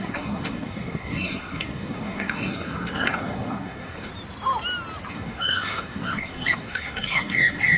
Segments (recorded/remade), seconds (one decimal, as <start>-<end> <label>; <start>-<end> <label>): 0.0-4.1 remade; 4.1-5.1 recorded; 5.1-7.8 remade